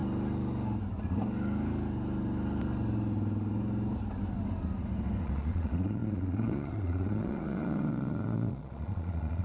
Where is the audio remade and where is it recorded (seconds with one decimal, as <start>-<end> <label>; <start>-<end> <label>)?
0.0-5.2 recorded; 5.2-9.4 remade